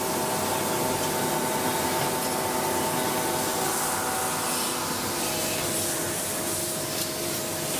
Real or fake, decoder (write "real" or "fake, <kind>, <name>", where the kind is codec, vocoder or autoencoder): real